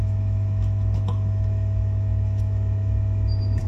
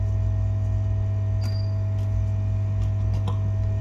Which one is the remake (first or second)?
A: first